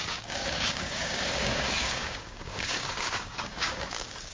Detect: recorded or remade remade